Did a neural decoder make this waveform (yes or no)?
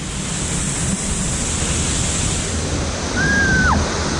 no